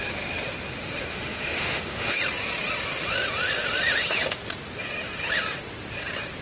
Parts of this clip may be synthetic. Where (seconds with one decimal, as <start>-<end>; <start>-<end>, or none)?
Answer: 1.1-2.2